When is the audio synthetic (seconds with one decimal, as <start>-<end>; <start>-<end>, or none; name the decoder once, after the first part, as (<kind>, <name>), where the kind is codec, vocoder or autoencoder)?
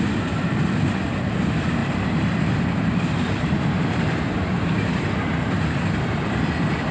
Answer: 1.8-5.1 (vocoder, BigVGAN v2)